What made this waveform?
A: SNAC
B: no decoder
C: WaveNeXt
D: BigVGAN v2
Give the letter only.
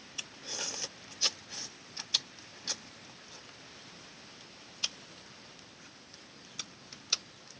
B